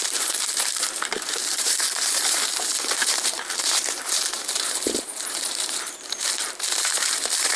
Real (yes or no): no